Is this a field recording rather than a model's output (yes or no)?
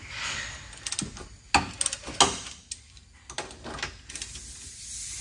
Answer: yes